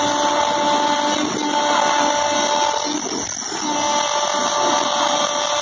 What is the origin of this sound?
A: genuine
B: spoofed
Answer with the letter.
A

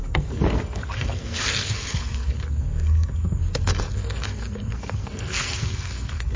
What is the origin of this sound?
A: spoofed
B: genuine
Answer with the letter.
A